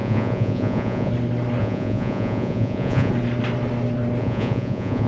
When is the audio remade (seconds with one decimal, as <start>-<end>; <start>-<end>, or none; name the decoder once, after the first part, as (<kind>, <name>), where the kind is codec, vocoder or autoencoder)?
0.0-1.1 (vocoder, Vocos); 1.6-3.1; 4.2-5.1